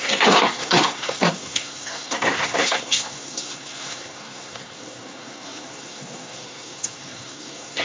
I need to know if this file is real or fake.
fake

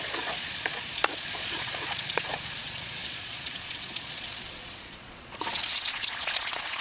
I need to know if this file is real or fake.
fake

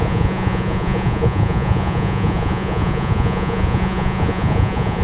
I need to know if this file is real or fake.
fake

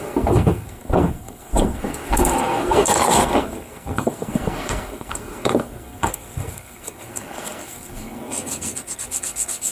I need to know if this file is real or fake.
fake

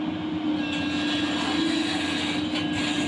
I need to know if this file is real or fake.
real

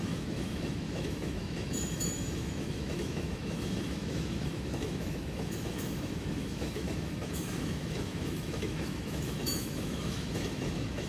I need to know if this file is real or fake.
fake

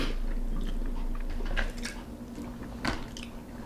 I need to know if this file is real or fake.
real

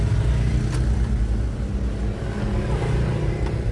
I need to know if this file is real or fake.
real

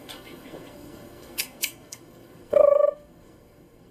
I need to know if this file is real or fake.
fake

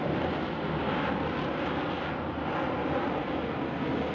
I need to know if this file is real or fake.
real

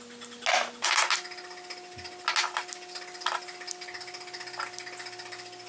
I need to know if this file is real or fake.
real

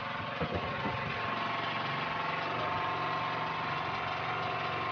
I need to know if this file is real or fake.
real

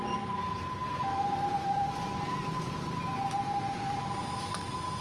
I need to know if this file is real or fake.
real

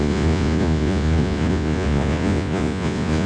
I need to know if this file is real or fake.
fake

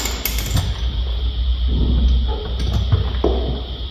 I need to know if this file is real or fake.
real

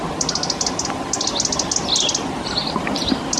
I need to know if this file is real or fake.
real